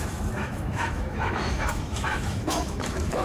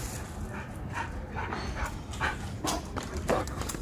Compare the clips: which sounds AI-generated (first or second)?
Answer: first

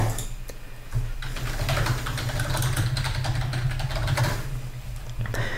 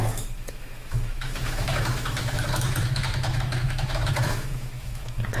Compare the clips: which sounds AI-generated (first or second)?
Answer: second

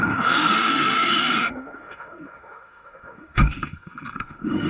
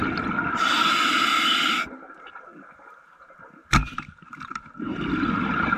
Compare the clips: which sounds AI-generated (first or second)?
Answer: first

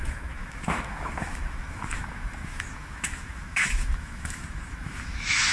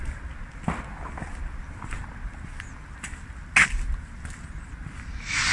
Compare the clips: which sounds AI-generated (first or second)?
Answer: first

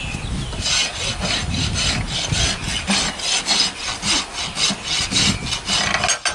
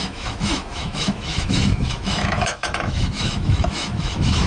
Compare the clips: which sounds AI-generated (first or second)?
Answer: second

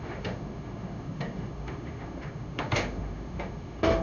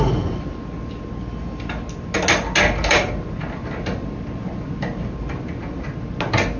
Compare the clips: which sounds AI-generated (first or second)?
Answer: first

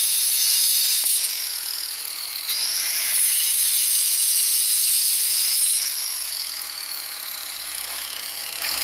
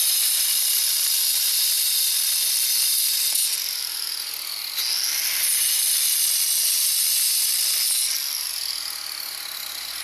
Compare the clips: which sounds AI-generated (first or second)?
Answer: first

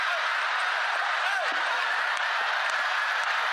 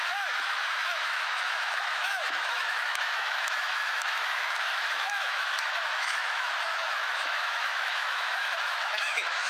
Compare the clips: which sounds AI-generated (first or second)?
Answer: second